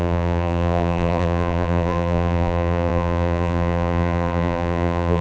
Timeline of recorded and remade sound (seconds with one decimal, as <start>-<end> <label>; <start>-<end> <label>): 0.0-5.2 remade